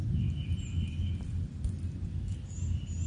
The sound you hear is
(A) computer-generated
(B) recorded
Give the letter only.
B